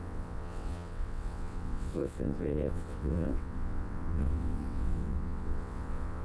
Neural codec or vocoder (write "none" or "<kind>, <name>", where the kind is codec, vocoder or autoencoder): vocoder, WaveNeXt